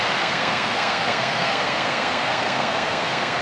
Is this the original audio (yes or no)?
no